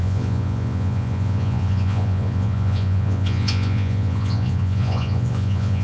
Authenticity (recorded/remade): remade